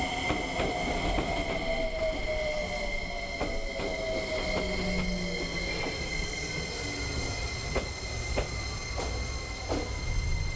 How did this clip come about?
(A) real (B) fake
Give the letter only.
A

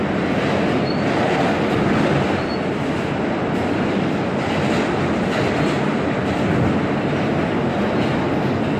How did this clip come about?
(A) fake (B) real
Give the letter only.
B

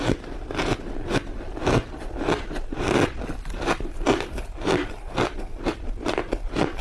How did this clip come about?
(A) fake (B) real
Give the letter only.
B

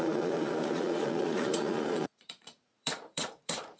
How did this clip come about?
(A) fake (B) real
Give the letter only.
A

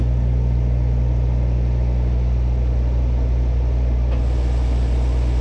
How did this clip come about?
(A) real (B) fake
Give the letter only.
A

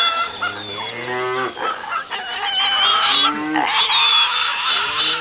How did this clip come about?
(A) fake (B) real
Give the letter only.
B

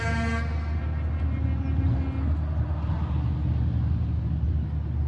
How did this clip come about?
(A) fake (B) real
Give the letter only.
B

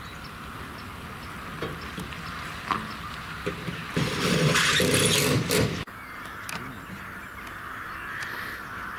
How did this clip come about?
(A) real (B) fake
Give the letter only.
A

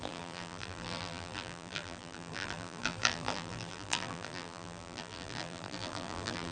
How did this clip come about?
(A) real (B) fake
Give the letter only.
B